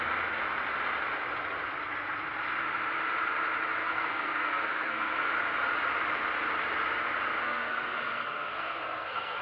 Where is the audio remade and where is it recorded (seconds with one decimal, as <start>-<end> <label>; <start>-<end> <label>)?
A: 0.0-3.8 recorded; 3.8-5.3 remade; 5.3-7.3 recorded; 7.3-9.4 remade